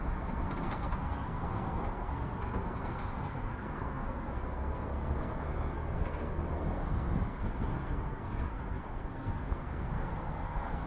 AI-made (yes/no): yes